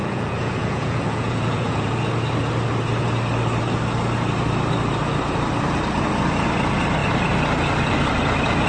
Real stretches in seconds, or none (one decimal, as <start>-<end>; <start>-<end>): 1.9-8.7